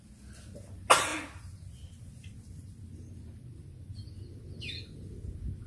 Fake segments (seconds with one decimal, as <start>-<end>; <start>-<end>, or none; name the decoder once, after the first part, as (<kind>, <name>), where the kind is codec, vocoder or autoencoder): none